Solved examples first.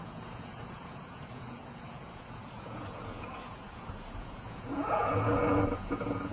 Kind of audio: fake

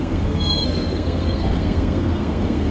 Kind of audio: fake